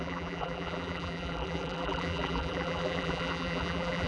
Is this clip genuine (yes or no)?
no